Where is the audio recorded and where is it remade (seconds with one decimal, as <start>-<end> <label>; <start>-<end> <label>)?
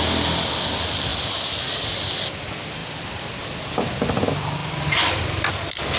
0.0-2.8 recorded; 2.8-3.4 remade; 3.4-4.6 recorded; 4.6-5.5 remade; 5.5-6.0 recorded